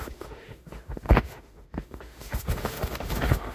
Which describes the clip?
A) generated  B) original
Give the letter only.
A